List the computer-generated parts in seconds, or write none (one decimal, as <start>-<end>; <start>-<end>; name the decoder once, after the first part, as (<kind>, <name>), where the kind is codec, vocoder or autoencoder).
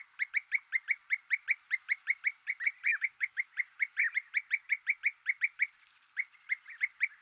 2.9-3.5 (autoencoder, DAC-VAE)